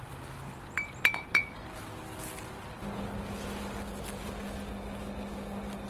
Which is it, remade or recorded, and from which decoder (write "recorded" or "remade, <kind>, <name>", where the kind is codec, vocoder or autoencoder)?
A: recorded